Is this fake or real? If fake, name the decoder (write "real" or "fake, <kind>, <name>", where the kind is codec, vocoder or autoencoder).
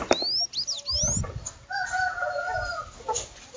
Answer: real